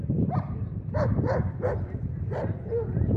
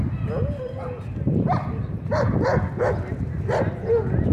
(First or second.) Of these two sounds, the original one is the second